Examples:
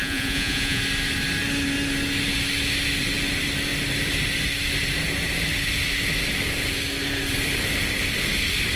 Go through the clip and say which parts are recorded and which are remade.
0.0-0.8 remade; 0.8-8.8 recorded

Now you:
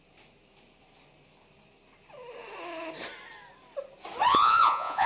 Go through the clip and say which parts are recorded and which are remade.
0.0-4.3 recorded; 4.3-5.1 remade

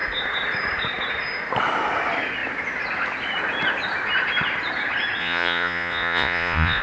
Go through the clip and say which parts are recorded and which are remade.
0.0-5.2 recorded; 5.2-6.8 remade

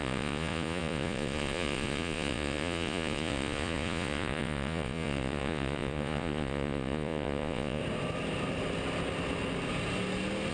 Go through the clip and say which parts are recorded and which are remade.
0.0-7.8 remade; 7.8-10.5 recorded